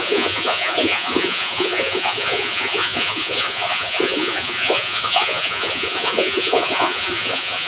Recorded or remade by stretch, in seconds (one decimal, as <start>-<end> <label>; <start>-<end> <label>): 0.0-7.7 remade